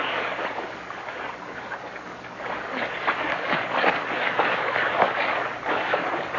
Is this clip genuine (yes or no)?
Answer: no